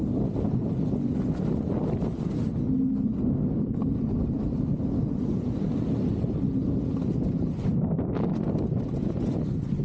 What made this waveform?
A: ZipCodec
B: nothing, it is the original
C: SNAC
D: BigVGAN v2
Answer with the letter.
B